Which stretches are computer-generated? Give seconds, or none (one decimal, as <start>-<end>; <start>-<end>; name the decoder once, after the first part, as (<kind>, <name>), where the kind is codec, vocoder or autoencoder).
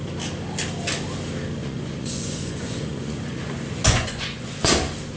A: 1.6-4.7 (vocoder, Vocos)